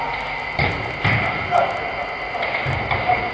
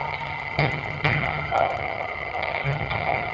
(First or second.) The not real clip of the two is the second